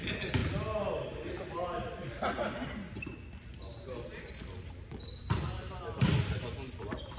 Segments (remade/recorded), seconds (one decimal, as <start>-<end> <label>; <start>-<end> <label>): 0.0-7.2 recorded